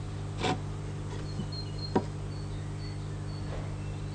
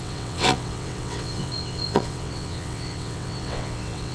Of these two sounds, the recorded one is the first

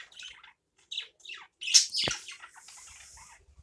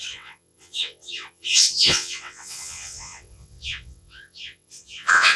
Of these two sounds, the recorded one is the first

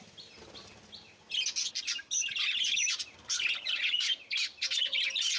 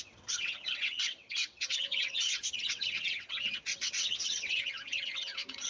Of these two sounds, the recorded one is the first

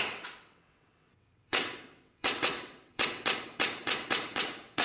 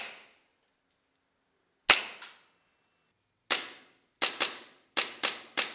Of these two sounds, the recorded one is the second